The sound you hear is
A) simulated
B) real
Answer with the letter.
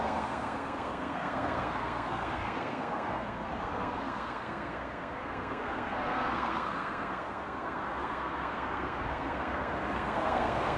A